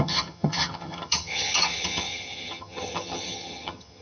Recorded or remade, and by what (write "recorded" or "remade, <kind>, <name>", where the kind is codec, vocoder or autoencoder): remade, vocoder, HiFi-GAN